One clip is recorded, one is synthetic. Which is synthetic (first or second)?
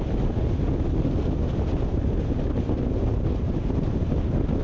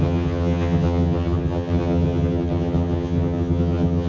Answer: second